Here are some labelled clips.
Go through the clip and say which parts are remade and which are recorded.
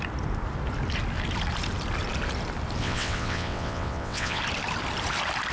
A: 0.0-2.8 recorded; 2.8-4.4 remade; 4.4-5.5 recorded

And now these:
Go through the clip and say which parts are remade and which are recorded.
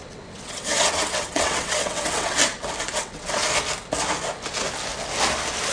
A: 0.0-2.4 remade; 2.4-3.0 recorded; 3.0-3.4 remade; 3.4-5.7 recorded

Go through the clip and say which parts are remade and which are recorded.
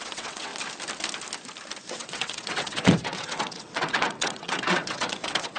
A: 0.0-0.5 remade; 0.5-1.9 recorded; 1.9-5.6 remade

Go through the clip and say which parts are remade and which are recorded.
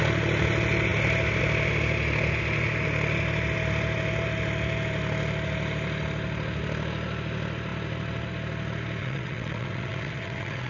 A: 0.0-9.0 recorded; 9.0-10.7 remade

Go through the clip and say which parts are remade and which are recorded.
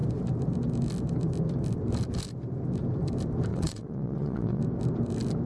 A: 0.0-3.5 recorded; 3.5-4.6 remade; 4.6-5.5 recorded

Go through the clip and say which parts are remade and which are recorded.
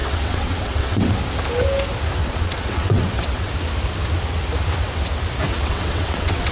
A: 0.0-1.1 remade; 1.1-2.2 recorded; 2.2-3.5 remade; 3.5-5.5 recorded; 5.5-6.5 remade